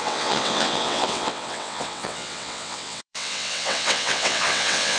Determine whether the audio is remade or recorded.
remade